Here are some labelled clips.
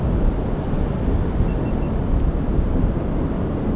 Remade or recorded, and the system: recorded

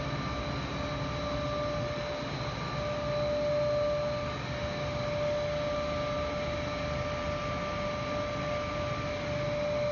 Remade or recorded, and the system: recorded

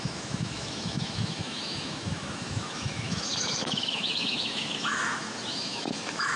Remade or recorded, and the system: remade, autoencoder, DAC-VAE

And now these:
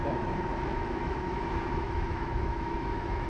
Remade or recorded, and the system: remade, autoencoder, DAC-VAE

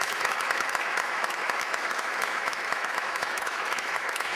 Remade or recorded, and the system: remade, autoencoder, DAC-VAE